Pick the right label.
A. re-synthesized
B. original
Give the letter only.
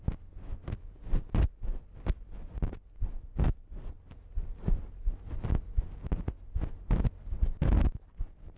B